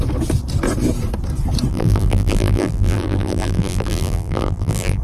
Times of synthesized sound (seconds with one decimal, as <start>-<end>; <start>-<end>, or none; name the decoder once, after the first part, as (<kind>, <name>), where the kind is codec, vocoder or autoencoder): 1.7-5.0 (vocoder, BigVGAN v2)